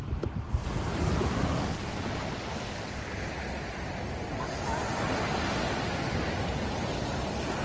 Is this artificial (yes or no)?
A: no